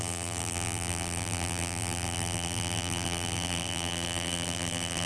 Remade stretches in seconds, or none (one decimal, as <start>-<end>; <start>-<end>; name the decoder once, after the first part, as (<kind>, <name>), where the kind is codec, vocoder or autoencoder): 0.0-5.1 (vocoder, BigVGAN v2)